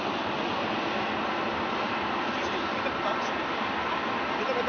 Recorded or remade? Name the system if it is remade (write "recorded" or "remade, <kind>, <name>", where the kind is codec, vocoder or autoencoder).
recorded